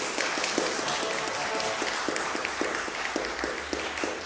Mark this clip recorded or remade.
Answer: recorded